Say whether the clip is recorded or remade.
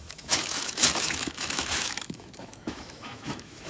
remade